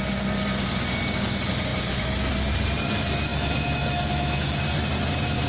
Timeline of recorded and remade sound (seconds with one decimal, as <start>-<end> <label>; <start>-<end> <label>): 0.0-1.7 recorded; 1.7-2.3 remade; 2.3-3.3 recorded; 3.3-4.6 remade; 4.6-5.5 recorded